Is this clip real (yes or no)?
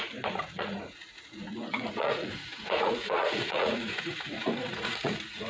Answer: no